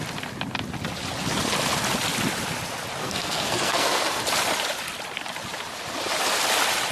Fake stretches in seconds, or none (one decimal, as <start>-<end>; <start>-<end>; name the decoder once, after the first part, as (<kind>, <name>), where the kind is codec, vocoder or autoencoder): 3.0-4.2 (codec, SNAC)